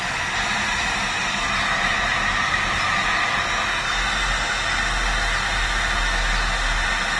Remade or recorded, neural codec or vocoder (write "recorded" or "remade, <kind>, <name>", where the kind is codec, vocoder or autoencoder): recorded